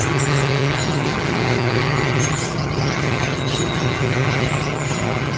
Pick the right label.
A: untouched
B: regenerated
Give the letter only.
B